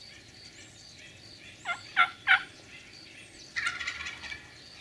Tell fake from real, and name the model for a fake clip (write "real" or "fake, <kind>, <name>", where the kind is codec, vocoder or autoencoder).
real